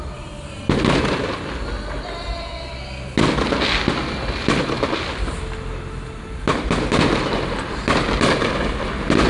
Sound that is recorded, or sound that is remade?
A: recorded